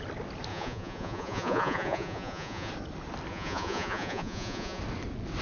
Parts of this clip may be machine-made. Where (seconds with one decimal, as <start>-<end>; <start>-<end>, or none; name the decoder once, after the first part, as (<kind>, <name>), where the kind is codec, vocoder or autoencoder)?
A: 0.5-2.7 (vocoder, Vocos); 3.3-4.8